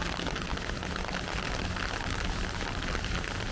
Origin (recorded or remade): recorded